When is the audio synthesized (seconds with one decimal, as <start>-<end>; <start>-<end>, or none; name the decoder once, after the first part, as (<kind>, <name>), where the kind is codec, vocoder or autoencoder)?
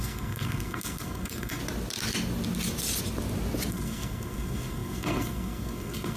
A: 0.0-1.6 (codec, SNAC); 3.7-6.2